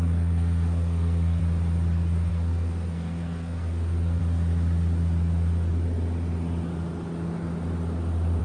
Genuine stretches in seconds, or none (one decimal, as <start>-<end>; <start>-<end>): 1.4-2.3; 4.2-8.4